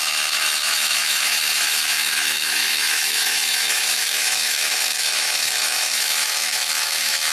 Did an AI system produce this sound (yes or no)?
yes